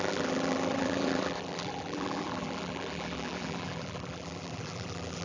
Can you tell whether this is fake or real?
fake